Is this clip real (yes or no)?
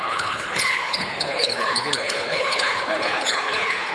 no